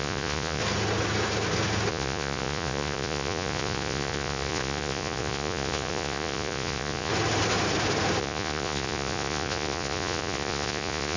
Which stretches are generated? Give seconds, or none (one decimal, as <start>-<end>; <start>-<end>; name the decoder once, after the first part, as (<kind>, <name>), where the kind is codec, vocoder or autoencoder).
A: 0.0-0.6 (vocoder, Vocos); 1.9-7.1; 8.2-11.2

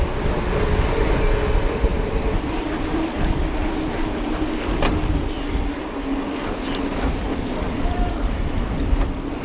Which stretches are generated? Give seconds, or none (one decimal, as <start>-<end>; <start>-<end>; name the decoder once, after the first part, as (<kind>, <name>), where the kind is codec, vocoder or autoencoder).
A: 1.9-5.5 (vocoder, BigVGAN v2); 6.9-8.8

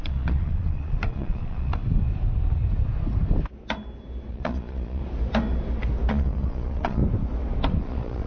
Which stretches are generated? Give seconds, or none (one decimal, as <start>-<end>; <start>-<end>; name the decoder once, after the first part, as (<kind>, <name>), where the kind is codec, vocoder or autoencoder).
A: 0.0-1.8 (vocoder, Vocos); 4.3-5.0; 6.1-7.0; 7.8-8.3

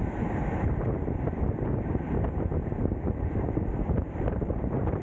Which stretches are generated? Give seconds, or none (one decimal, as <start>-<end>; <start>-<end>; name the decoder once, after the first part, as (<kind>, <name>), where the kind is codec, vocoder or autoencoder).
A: 0.4-1.4 (vocoder, BigVGAN v2); 2.7-5.0

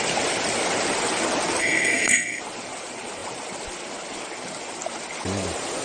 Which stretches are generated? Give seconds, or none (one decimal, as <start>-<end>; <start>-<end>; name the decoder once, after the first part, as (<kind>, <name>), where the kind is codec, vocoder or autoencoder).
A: 1.6-2.4 (codec, SNAC)

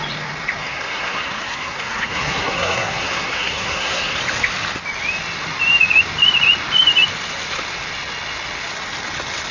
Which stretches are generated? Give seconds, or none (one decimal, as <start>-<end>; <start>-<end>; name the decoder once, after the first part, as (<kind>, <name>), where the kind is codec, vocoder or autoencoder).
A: 0.6-4.2 (codec, SNAC)

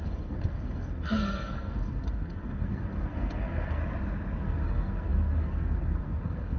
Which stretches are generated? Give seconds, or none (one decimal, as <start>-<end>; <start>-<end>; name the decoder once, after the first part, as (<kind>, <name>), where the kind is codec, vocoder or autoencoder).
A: 0.0-3.8 (codec, SNAC); 4.4-6.6

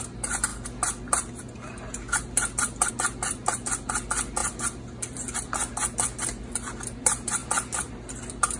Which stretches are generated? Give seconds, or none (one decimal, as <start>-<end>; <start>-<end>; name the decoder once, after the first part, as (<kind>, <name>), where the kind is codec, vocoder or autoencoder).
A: none